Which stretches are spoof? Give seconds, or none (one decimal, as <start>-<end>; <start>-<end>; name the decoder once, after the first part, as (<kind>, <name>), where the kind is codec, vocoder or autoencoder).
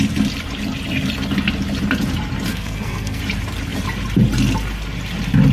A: 2.5-3.2 (codec, SNAC)